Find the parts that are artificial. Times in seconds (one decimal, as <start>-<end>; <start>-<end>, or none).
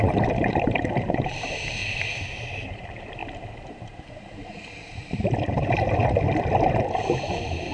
0.0-1.8; 2.6-3.2; 3.7-6.0; 6.7-7.7